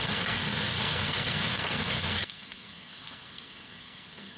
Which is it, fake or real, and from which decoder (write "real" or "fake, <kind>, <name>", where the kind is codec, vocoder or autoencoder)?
fake, codec, SNAC